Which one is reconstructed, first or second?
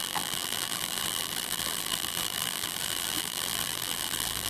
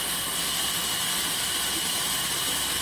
first